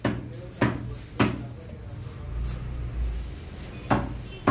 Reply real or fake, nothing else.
real